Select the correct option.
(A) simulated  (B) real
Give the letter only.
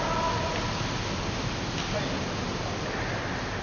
B